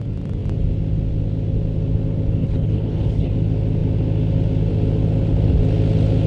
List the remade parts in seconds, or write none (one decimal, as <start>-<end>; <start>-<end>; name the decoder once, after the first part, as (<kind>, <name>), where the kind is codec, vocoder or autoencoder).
2.4-3.3 (codec, HILCodec)